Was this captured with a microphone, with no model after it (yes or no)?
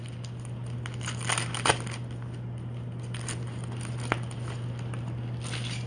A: yes